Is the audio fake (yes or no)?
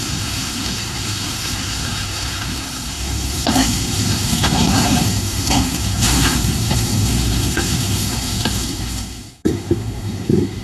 yes